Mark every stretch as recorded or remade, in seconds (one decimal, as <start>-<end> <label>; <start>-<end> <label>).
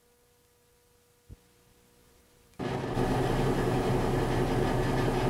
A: 0.0-2.0 recorded; 2.0-3.9 remade; 3.9-5.3 recorded